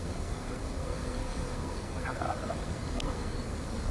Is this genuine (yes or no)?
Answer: no